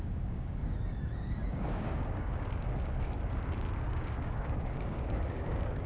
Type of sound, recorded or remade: remade